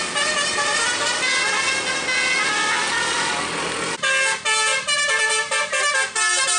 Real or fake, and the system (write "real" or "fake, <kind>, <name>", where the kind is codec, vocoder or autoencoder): real